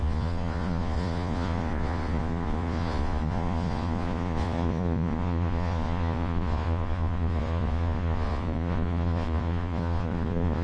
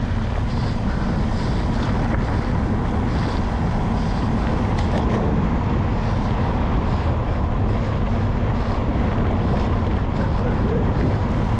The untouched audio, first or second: second